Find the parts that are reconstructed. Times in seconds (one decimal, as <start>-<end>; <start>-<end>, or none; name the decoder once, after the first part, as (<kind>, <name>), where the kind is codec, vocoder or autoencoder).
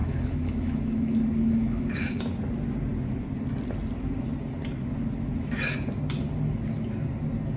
0.0-2.2 (autoencoder, DAC-VAE)